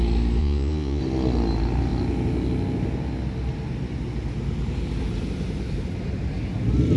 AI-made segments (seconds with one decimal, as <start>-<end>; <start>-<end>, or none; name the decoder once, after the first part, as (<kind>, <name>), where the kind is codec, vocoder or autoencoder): 0.4-1.0 (vocoder, Vocos)